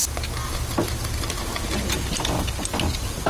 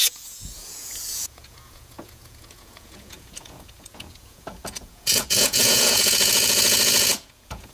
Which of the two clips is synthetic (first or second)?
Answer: second